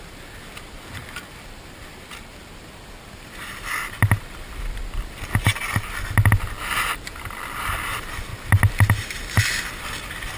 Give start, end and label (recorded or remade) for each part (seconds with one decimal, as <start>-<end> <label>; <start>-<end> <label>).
0.0-1.0 remade; 1.0-4.2 recorded; 4.2-5.5 remade; 5.5-7.0 recorded; 7.0-8.3 remade; 8.3-9.2 recorded; 9.2-10.4 remade